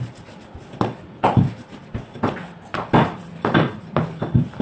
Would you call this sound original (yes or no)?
yes